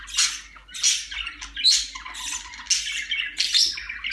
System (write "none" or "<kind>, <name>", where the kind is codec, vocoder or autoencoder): none